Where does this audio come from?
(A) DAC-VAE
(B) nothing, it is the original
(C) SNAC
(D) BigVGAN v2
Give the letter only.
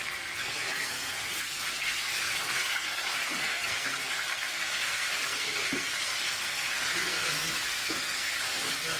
C